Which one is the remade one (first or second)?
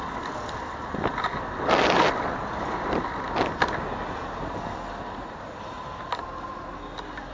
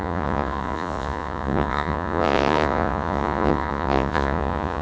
second